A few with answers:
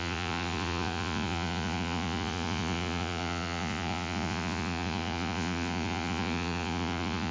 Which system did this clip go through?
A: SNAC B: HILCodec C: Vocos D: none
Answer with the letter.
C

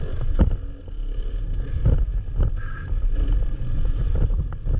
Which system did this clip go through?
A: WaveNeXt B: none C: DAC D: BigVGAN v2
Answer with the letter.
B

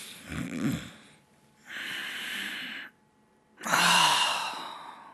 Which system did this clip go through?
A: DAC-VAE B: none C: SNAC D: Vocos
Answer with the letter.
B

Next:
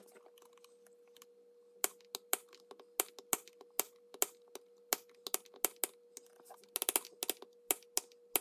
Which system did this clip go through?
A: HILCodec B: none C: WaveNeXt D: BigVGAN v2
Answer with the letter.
B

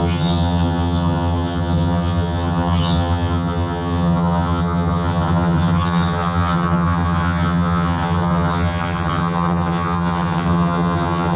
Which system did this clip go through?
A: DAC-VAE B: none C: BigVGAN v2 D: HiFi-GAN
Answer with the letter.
D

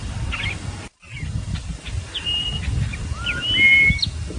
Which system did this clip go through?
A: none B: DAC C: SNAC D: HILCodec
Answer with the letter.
A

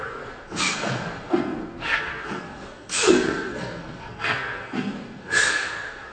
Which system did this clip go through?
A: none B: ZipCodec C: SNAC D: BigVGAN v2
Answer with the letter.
C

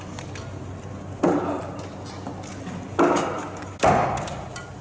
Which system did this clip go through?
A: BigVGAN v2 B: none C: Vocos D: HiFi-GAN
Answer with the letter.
B